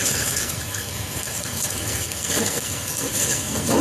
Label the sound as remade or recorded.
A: remade